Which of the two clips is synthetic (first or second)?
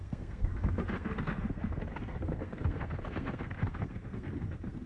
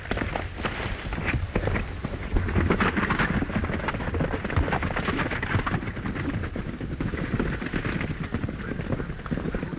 first